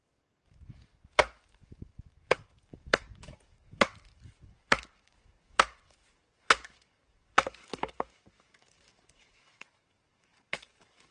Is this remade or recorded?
remade